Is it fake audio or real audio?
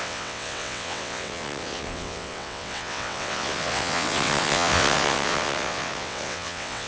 fake